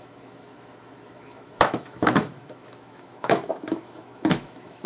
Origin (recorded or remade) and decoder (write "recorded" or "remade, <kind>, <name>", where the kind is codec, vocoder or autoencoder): remade, autoencoder, DAC-VAE